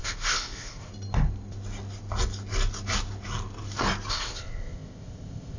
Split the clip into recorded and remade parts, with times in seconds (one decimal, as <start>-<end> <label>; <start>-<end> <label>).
0.0-0.9 remade; 0.9-4.1 recorded; 4.1-5.6 remade